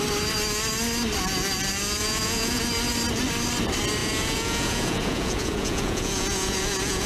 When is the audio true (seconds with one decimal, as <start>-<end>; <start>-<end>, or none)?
0.0-2.0; 2.6-4.0